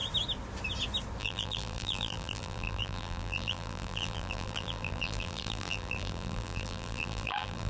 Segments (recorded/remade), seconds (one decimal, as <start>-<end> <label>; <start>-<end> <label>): 0.0-1.2 recorded; 1.2-7.7 remade